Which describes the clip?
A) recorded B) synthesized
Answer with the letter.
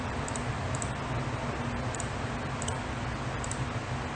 A